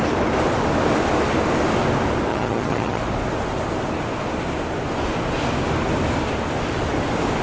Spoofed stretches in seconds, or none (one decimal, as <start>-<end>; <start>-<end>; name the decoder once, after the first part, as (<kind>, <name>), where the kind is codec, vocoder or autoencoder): 2.3-3.0 (vocoder, HiFi-GAN)